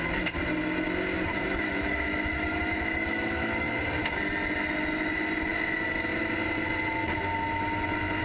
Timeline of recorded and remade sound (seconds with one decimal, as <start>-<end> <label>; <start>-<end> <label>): 0.0-1.3 recorded; 1.3-3.7 remade; 3.7-8.2 recorded